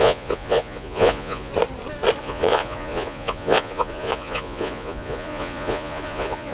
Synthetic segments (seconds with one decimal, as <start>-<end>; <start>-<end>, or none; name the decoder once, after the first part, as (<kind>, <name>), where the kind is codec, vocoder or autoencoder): 0.0-1.5 (vocoder, Vocos); 2.2-6.5